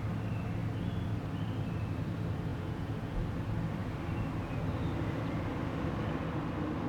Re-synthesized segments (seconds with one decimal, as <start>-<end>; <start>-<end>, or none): 2.5-3.2